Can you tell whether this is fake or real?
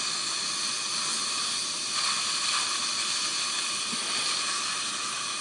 real